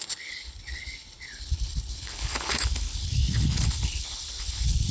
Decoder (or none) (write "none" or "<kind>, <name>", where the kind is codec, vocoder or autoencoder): codec, HILCodec